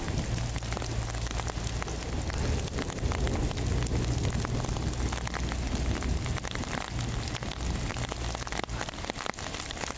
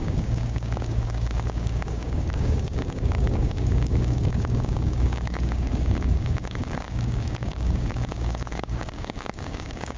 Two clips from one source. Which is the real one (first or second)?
first